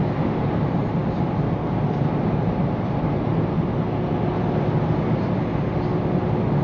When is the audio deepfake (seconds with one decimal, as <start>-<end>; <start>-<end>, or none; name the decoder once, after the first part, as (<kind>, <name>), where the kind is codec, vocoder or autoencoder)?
none